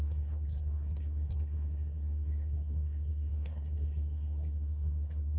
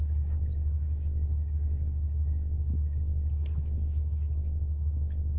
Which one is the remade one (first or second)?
first